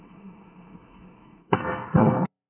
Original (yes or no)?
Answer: no